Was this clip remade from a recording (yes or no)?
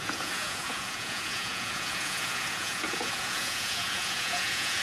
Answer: yes